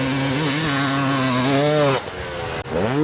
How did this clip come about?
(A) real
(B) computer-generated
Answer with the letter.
A